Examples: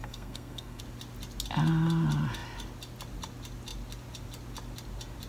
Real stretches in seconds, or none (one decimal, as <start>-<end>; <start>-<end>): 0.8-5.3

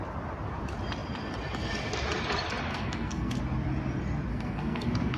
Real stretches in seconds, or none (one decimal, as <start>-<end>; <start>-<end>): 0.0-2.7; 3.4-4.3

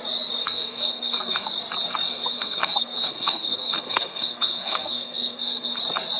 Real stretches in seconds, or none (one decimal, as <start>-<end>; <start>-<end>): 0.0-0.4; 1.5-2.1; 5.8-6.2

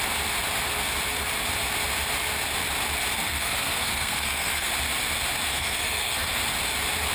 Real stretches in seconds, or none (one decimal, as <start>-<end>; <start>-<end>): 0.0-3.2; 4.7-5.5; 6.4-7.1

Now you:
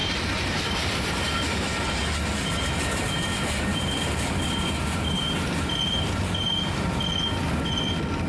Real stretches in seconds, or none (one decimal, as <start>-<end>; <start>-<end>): 0.0-8.3